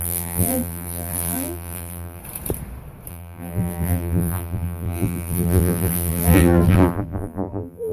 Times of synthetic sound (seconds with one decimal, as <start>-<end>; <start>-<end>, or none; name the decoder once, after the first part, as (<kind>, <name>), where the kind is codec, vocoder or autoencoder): 0.0-2.2 (vocoder, BigVGAN v2); 3.1-7.9